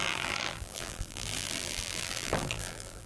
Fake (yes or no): yes